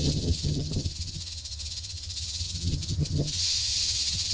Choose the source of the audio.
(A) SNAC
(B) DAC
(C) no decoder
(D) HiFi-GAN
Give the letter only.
D